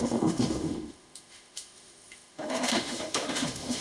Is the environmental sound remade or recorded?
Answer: remade